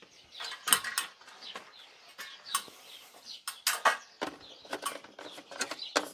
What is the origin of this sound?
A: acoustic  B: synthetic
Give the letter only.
A